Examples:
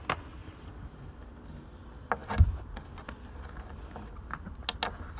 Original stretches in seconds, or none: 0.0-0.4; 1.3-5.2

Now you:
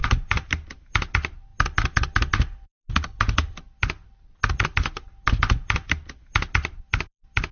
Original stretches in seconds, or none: 0.8-7.5

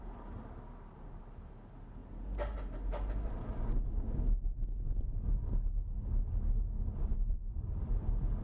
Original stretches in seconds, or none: 0.0-7.1

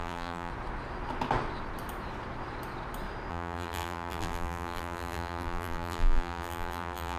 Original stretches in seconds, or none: 0.5-3.3

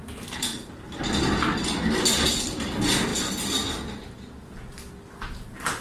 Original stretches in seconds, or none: 0.0-3.1; 4.1-5.8

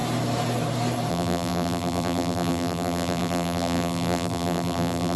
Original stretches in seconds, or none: 0.0-1.1